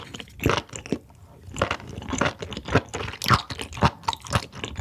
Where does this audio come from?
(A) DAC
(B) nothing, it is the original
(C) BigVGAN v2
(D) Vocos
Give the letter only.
B